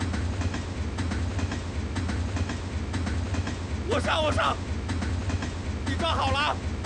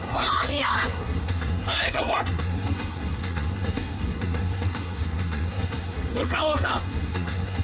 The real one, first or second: first